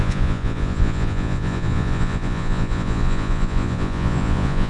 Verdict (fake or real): fake